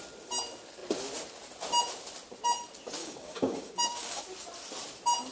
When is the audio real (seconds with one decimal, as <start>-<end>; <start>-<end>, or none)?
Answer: 0.0-3.0; 4.2-5.3